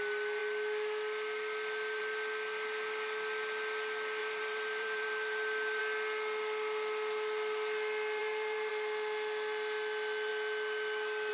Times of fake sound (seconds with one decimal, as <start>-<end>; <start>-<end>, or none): 4.2-5.8; 8.2-8.7